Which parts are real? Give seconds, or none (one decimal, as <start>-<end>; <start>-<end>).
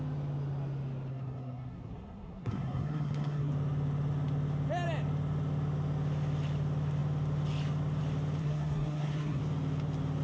0.0-1.1; 3.5-8.4; 9.4-10.2